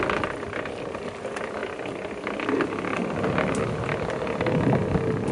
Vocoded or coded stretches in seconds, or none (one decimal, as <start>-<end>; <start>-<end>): none